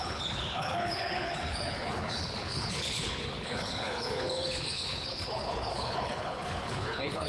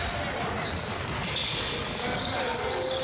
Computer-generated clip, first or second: first